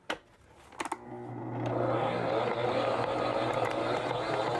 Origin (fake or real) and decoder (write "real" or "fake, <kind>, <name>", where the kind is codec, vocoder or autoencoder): real